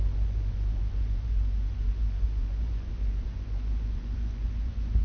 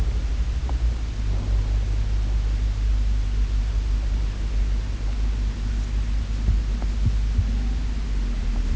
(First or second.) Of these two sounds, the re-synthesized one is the first